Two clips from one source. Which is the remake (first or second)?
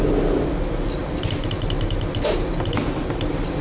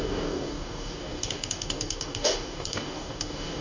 second